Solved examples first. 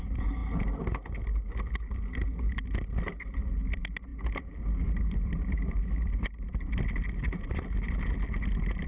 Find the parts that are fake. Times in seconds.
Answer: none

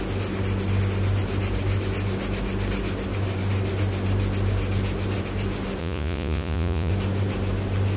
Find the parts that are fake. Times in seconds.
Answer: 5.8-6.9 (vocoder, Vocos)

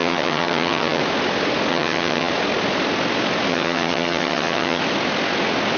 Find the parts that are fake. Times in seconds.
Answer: 0.0-1.0 (vocoder, HiFi-GAN); 1.7-2.3; 3.5-4.8